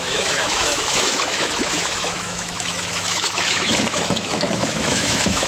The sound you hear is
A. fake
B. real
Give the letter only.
A